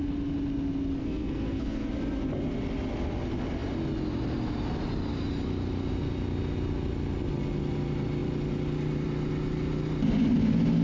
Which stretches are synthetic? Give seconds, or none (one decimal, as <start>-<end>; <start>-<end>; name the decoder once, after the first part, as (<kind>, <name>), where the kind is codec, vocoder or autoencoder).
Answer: 1.0-1.9 (codec, SNAC)